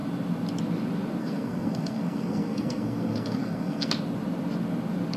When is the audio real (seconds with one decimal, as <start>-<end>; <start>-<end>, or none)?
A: 0.0-1.2; 3.9-5.2